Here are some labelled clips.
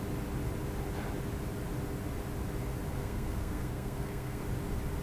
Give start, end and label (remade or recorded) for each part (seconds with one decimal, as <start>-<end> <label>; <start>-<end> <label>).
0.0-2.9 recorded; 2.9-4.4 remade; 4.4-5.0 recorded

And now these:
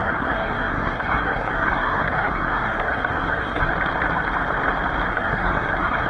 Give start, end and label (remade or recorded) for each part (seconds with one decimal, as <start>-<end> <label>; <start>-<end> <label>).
0.0-3.7 remade; 3.7-5.1 recorded; 5.1-6.1 remade

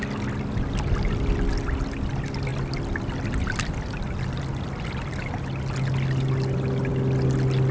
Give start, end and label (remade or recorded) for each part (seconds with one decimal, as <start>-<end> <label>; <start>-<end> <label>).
0.0-7.7 recorded

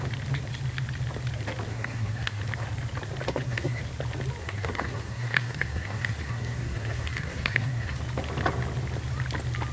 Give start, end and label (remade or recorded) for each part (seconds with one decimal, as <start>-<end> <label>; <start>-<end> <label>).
0.0-1.7 recorded; 1.7-2.4 remade; 2.4-3.3 recorded; 3.3-3.8 remade; 3.8-4.4 recorded; 4.4-8.0 remade; 8.0-9.7 recorded

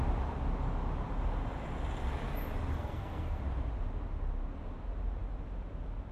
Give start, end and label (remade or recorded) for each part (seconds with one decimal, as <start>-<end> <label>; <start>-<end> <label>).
0.0-2.7 recorded; 2.7-3.4 remade; 3.4-6.1 recorded